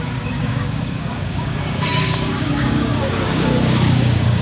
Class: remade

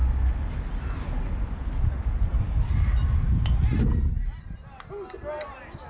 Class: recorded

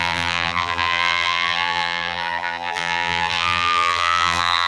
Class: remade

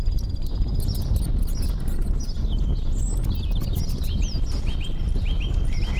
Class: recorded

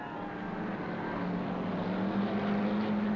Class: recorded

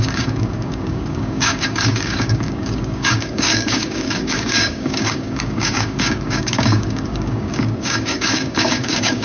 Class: remade